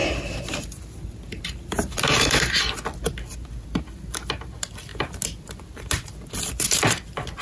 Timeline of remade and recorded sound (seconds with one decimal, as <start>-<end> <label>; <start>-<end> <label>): 0.0-2.5 remade; 2.5-7.4 recorded